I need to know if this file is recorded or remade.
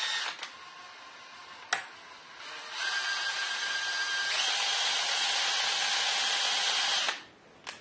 recorded